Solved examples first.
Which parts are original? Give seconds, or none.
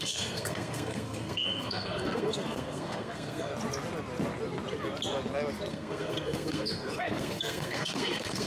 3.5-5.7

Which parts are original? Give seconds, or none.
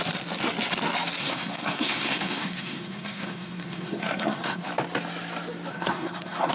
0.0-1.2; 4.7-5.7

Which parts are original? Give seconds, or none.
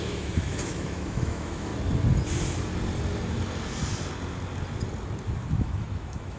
1.7-5.5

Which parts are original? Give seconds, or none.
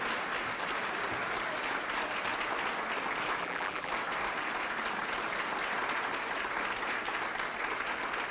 0.0-3.4; 3.9-8.3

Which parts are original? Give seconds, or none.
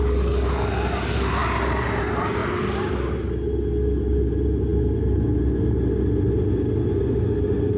0.0-7.8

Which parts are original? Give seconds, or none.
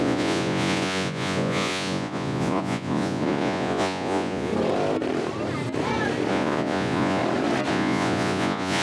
4.5-6.3; 7.2-7.7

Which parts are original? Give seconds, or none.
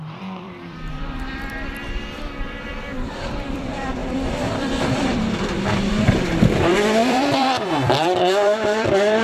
none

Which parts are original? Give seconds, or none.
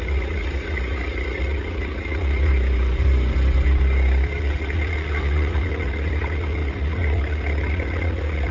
2.5-4.4